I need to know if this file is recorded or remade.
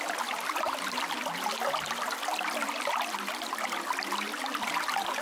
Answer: remade